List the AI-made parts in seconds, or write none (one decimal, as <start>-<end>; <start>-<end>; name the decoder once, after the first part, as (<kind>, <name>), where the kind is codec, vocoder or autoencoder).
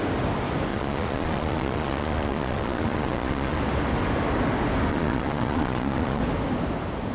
0.7-3.6 (vocoder, Vocos); 4.9-6.2